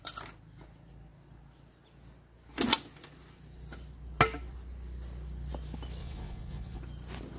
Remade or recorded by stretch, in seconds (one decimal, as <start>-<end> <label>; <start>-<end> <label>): 0.0-6.0 recorded; 6.0-6.8 remade; 6.8-7.4 recorded